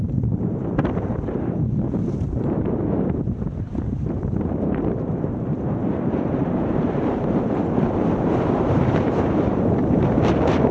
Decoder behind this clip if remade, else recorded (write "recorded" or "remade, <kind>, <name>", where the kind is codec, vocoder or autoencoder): remade, vocoder, BigVGAN v2